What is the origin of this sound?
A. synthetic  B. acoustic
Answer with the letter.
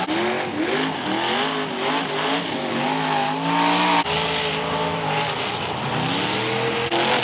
B